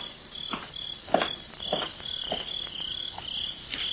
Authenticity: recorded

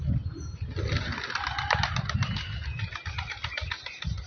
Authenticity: recorded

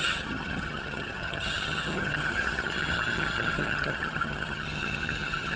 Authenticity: remade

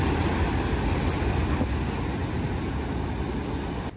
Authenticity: recorded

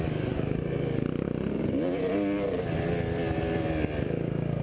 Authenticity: recorded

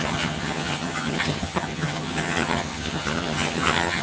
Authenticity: remade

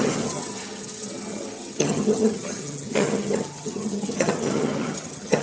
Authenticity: remade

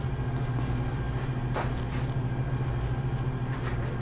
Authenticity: recorded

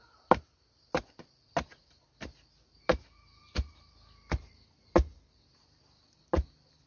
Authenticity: recorded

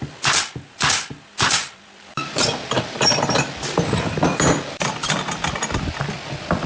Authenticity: recorded